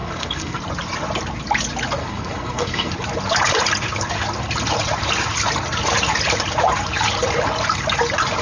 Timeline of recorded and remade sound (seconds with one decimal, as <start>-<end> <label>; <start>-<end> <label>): 0.0-0.6 remade; 0.6-2.0 recorded; 2.0-2.9 remade; 2.9-8.4 recorded